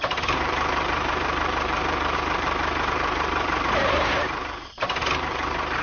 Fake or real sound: fake